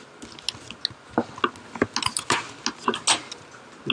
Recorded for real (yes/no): yes